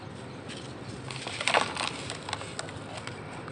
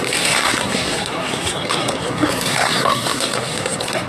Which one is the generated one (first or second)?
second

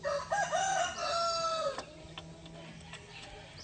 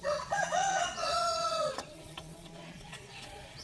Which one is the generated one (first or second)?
second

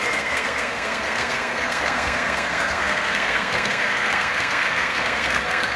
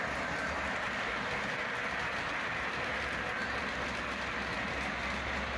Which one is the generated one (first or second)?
first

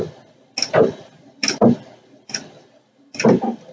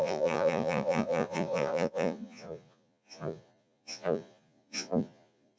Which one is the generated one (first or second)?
second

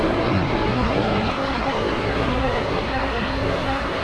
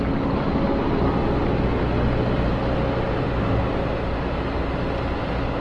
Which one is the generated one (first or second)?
first